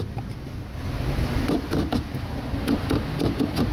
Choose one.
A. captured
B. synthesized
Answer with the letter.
A